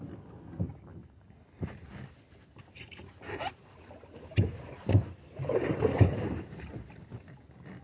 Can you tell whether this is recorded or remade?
recorded